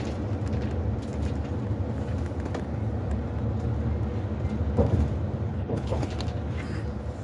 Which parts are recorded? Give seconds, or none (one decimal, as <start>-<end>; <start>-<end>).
0.0-5.5; 6.1-7.2